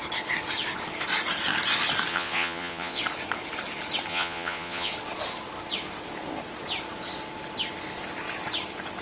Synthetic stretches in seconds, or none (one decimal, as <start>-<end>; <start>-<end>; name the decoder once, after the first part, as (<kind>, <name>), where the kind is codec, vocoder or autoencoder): 2.1-3.0 (vocoder, Vocos); 4.1-4.9